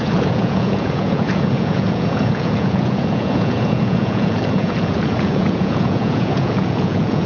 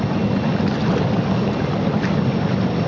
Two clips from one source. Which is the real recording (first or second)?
second